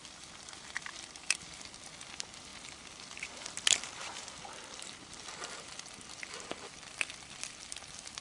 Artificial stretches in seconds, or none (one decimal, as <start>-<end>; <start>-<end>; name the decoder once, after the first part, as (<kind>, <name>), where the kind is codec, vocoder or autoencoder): 0.0-8.2 (vocoder, BigVGAN v2)